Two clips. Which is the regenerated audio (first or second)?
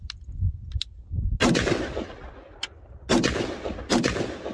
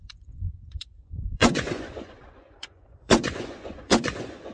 second